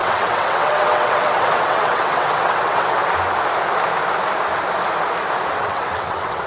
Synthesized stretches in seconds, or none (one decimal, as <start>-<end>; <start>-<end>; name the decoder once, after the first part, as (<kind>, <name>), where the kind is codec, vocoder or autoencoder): 0.0-3.0 (vocoder, WaveNeXt); 5.5-6.5